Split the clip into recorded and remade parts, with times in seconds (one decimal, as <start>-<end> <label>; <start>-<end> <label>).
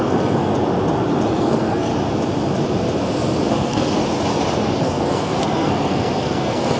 0.0-0.5 remade; 0.5-1.4 recorded; 1.4-1.9 remade; 1.9-3.5 recorded; 3.5-4.0 remade; 4.0-4.8 recorded; 4.8-6.8 remade